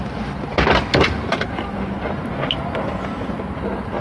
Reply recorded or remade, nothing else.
recorded